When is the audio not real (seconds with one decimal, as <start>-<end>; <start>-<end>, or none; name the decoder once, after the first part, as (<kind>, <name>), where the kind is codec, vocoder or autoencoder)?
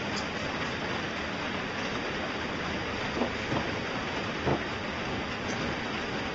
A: 0.0-0.4 (vocoder, BigVGAN v2); 1.0-4.5; 5.4-6.3